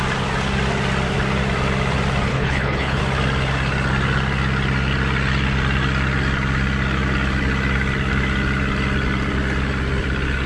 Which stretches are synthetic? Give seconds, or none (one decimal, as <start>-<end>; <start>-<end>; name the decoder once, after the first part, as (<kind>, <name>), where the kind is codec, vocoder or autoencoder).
2.3-3.0 (codec, HILCodec)